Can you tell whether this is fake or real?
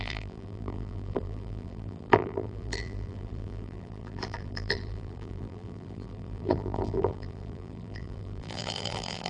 fake